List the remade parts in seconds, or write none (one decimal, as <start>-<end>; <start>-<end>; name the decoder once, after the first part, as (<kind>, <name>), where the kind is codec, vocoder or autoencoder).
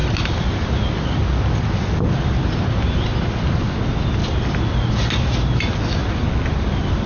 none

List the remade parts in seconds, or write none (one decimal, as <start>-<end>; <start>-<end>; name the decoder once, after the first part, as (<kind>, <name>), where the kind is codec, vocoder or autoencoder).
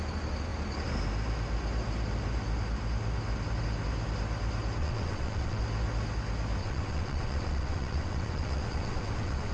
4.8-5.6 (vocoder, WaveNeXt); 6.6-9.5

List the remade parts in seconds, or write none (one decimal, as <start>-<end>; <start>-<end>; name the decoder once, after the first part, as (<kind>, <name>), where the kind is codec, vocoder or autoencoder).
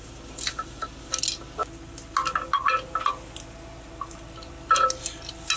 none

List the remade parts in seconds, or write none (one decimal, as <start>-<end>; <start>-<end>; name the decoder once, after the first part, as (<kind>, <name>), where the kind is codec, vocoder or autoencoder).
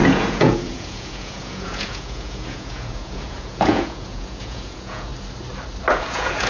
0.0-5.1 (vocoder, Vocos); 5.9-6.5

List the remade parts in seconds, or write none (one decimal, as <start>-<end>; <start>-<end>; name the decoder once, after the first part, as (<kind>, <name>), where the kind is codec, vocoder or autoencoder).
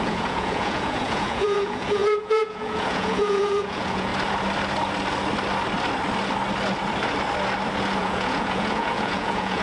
0.0-4.1 (vocoder, Vocos); 8.0-9.6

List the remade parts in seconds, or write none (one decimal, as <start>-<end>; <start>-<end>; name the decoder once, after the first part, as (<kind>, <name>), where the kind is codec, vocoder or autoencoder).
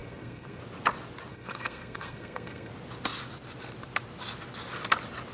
0.0-0.6 (codec, SNAC); 1.3-2.7